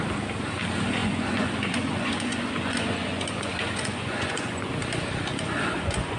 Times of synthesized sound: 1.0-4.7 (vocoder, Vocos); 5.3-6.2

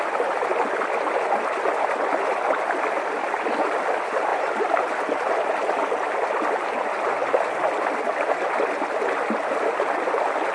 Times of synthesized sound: none

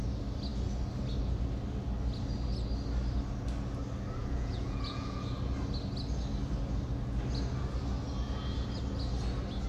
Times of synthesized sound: 4.2-5.3 (vocoder, Vocos)

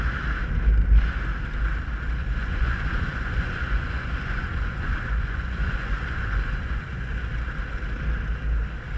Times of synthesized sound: 2.4-7.3 (vocoder, Vocos)

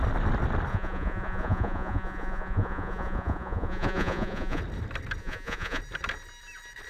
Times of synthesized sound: 0.7-4.6 (vocoder, Vocos); 5.2-5.8

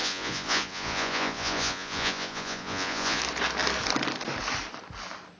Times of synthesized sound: 0.0-3.2 (vocoder, Vocos)

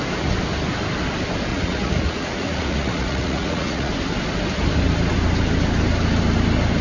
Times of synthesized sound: 1.5-3.9 (vocoder, Vocos)